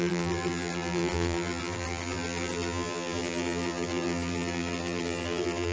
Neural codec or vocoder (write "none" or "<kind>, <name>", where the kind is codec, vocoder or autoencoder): vocoder, BigVGAN v2